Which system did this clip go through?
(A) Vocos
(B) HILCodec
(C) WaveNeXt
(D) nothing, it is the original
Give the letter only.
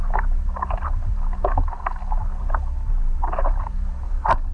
D